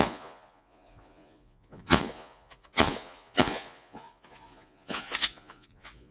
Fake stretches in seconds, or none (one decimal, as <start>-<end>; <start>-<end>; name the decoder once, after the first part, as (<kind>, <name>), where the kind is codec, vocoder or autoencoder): 0.0-6.1 (vocoder, Vocos)